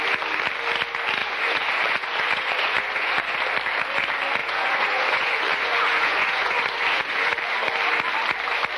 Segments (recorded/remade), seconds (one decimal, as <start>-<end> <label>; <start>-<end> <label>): 0.0-1.2 recorded; 1.2-3.4 remade; 3.4-4.4 recorded; 4.4-7.3 remade; 7.3-8.8 recorded